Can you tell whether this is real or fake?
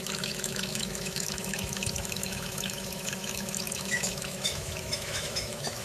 fake